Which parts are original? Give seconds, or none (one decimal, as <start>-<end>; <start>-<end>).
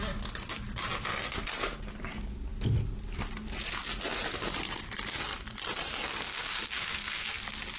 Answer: 0.0-6.3; 7.3-7.8